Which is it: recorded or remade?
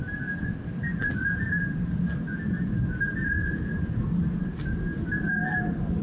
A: recorded